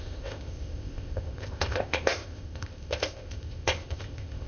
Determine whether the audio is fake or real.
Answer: fake